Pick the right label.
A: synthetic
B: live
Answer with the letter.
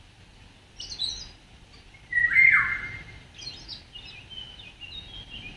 B